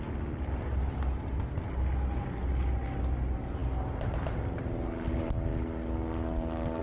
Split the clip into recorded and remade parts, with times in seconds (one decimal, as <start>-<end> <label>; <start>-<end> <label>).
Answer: 0.0-6.8 recorded